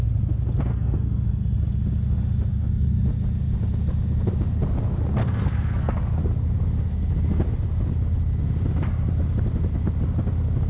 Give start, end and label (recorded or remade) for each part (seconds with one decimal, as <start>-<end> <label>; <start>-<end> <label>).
0.0-0.7 recorded; 0.7-1.4 remade; 1.4-2.5 recorded; 2.5-3.0 remade; 3.0-5.2 recorded; 5.2-6.1 remade; 6.1-10.7 recorded